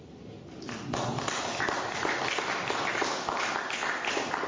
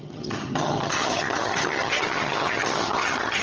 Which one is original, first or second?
first